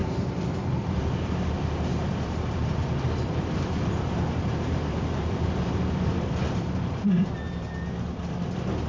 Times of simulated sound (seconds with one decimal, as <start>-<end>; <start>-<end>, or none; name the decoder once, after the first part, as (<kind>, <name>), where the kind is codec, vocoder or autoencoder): 0.0-8.9 (vocoder, BigVGAN v2)